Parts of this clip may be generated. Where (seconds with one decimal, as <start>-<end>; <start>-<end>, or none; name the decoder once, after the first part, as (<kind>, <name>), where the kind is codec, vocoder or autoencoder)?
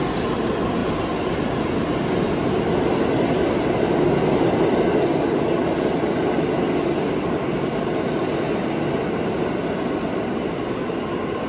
none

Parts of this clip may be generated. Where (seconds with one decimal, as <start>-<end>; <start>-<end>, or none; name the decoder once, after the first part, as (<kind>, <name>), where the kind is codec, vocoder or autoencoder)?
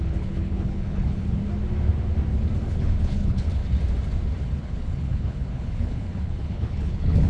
0.0-1.4 (codec, HILCodec); 2.7-3.6; 4.6-7.3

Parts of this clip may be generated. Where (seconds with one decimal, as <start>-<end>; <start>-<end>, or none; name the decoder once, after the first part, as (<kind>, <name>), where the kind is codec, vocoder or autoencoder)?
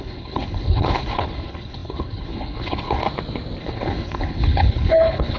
0.0-3.0 (codec, HILCodec); 3.6-5.4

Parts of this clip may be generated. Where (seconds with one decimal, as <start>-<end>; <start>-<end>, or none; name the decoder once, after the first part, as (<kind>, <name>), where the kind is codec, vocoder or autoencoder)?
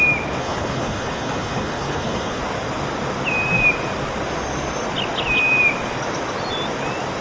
0.4-2.4 (codec, HILCodec)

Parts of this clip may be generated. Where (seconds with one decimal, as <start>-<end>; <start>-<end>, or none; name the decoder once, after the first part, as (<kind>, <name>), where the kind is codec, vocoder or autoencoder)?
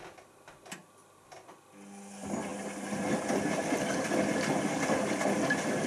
none